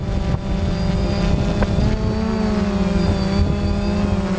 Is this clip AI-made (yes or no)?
no